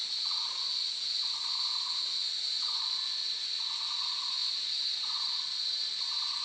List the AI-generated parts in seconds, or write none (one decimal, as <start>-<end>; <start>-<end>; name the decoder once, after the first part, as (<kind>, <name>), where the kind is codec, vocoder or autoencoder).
0.0-3.6 (vocoder, Vocos); 4.4-5.4